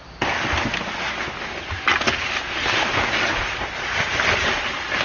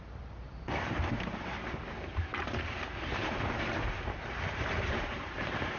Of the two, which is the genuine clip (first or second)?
first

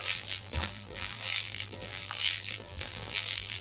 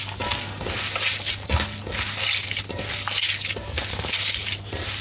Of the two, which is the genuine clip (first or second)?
second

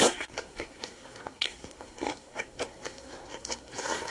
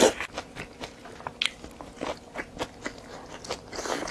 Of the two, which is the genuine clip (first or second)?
second